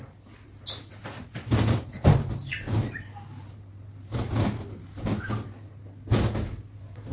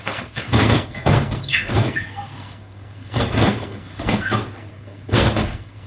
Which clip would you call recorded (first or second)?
first